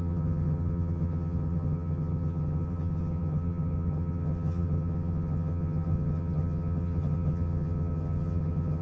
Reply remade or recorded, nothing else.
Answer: remade